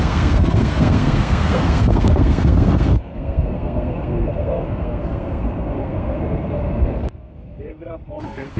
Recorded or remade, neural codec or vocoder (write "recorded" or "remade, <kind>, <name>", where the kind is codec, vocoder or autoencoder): remade, codec, SNAC